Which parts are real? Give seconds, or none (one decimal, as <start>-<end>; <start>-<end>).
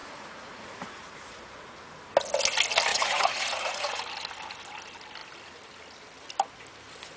1.8-2.9; 4.0-7.2